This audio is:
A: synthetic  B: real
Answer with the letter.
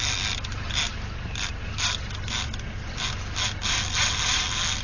B